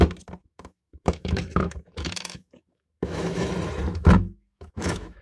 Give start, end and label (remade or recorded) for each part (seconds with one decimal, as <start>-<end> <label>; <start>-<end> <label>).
0.0-0.4 recorded; 0.4-3.5 remade; 3.5-3.9 recorded; 3.9-5.2 remade